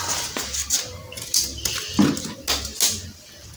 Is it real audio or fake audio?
real